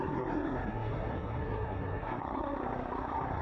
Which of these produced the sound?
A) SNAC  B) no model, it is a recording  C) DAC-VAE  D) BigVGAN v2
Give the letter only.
A